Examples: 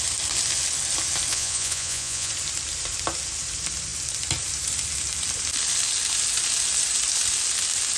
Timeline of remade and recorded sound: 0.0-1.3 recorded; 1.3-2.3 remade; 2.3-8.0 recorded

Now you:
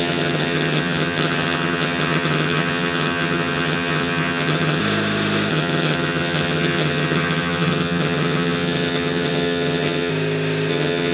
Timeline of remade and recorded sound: 0.0-4.8 remade; 4.8-5.5 recorded; 5.5-10.1 remade; 10.1-10.7 recorded; 10.7-11.1 remade

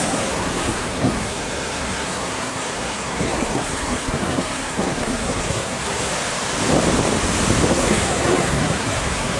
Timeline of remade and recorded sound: 0.0-6.1 remade; 6.1-7.7 recorded; 7.7-9.4 remade

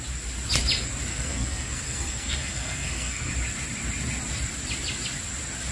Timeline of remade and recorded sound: 0.0-1.1 recorded; 1.1-3.3 remade; 3.3-5.7 recorded

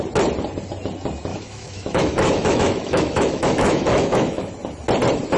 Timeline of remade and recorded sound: 0.0-1.3 recorded; 1.3-4.5 remade; 4.5-5.4 recorded

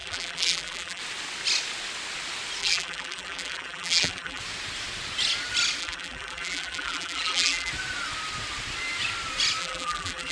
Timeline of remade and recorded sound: 0.0-1.0 remade; 1.0-2.6 recorded; 2.6-4.4 remade; 4.4-5.8 recorded; 5.8-7.7 remade; 7.7-9.6 recorded; 9.6-10.3 remade

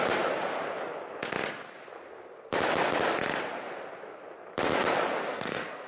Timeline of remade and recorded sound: 0.0-5.2 recorded; 5.2-5.9 remade

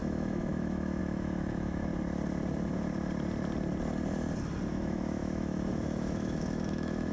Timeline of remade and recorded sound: 0.0-1.9 remade; 1.9-4.7 recorded; 4.7-7.1 remade